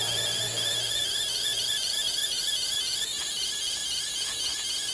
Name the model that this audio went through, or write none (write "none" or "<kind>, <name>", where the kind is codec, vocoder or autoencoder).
vocoder, Vocos